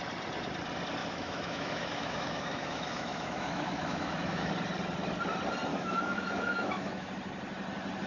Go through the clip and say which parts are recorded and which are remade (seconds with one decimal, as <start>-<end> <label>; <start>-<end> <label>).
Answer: 0.0-1.0 recorded; 1.0-4.5 remade; 4.5-5.7 recorded; 5.7-7.1 remade; 7.1-8.1 recorded